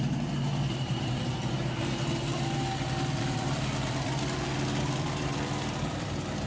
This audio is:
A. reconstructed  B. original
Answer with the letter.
A